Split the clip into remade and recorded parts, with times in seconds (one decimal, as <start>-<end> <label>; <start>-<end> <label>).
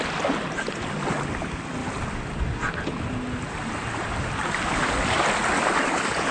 0.0-6.3 recorded